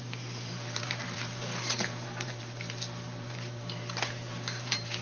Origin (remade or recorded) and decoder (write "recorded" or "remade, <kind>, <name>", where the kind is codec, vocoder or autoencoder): remade, vocoder, BigVGAN v2